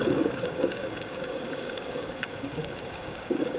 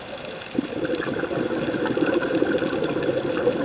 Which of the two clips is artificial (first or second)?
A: first